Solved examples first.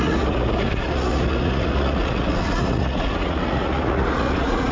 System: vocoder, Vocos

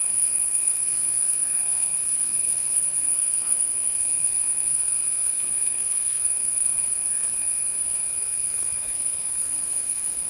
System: codec, SNAC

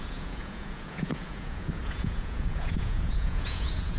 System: vocoder, Vocos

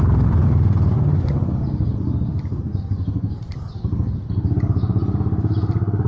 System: vocoder, BigVGAN v2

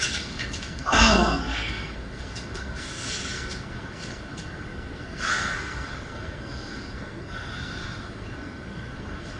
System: codec, SNAC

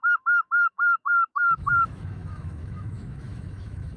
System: autoencoder, DAC-VAE